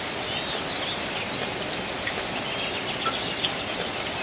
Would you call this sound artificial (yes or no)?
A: no